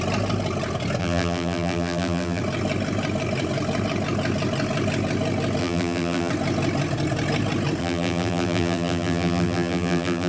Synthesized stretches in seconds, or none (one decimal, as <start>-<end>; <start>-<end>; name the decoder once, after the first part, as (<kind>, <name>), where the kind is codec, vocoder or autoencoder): 1.0-2.4 (vocoder, BigVGAN v2); 5.6-6.3; 7.8-10.3